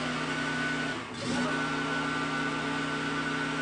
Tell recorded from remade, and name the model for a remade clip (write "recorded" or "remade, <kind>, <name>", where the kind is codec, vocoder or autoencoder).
recorded